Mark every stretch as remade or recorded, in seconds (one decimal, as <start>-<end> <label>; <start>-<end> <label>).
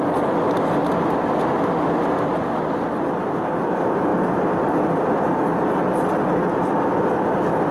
0.0-7.7 recorded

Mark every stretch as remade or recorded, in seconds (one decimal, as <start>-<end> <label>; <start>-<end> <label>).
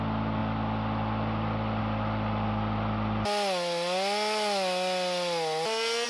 0.0-6.1 recorded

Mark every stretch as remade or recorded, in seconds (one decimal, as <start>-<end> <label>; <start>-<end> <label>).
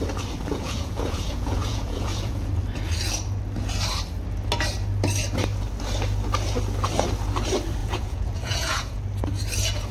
0.0-0.5 recorded; 0.5-2.5 remade; 2.5-7.8 recorded; 7.8-9.0 remade; 9.0-9.9 recorded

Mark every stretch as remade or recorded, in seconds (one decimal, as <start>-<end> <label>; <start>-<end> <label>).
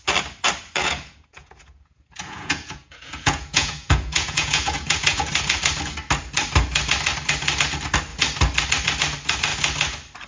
0.0-0.8 recorded; 0.8-5.3 remade; 5.3-10.3 recorded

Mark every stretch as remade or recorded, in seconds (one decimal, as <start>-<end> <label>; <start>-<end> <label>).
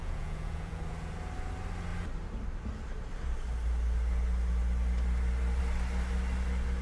0.0-0.8 remade; 0.8-6.8 recorded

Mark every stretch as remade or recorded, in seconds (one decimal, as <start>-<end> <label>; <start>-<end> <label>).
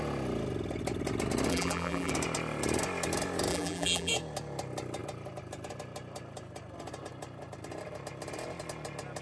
0.0-1.5 recorded; 1.5-2.1 remade; 2.1-3.5 recorded; 3.5-4.1 remade; 4.1-9.2 recorded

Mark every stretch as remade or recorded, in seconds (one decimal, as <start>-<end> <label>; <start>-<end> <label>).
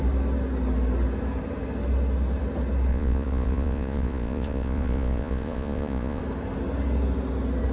0.0-2.9 recorded; 2.9-6.2 remade; 6.2-7.7 recorded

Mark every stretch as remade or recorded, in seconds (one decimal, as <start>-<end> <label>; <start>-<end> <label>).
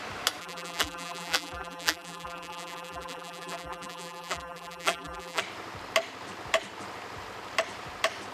0.0-0.4 recorded; 0.4-5.4 remade; 5.4-8.3 recorded